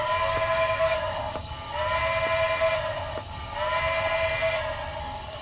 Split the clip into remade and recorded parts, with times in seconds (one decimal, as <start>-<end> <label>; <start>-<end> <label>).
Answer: 0.0-1.8 remade; 1.8-5.0 recorded; 5.0-5.4 remade